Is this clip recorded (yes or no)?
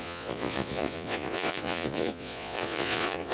no